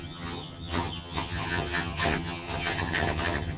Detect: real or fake fake